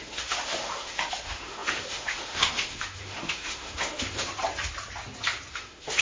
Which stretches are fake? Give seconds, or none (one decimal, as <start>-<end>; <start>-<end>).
0.0-4.3; 5.5-6.0